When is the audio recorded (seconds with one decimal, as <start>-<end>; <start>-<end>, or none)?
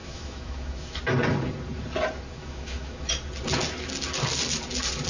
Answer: 1.0-2.3; 3.1-5.1